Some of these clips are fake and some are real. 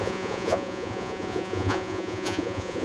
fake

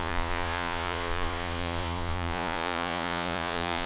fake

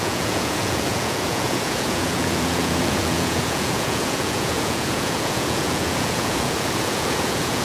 fake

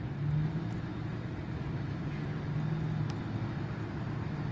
real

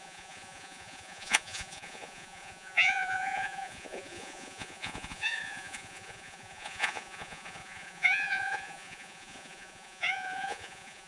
fake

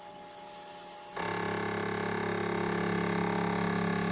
real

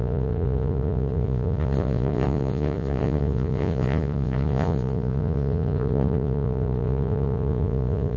fake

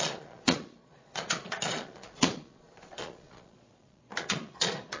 fake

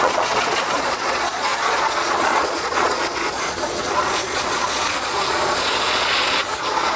fake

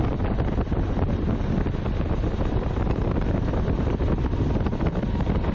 real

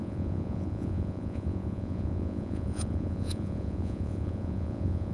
fake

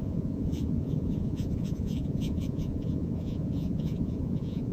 fake